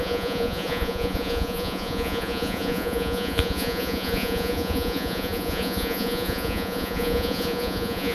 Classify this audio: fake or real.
fake